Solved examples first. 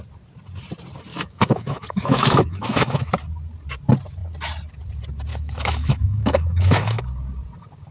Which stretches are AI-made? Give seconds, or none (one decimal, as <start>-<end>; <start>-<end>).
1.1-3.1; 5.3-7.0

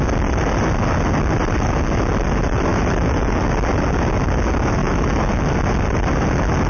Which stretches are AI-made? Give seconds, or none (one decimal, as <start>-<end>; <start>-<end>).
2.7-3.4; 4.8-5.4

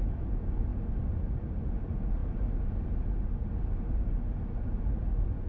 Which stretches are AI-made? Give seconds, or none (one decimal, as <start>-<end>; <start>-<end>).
0.0-0.7; 1.6-5.5

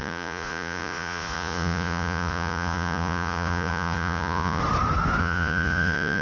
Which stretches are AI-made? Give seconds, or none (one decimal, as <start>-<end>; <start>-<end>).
0.0-4.6; 5.2-6.2

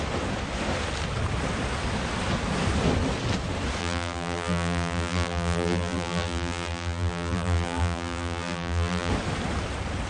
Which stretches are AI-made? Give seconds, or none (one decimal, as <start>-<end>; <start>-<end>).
3.8-9.1

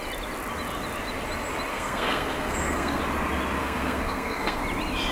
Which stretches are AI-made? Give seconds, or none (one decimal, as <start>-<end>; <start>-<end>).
1.7-3.0; 3.6-4.6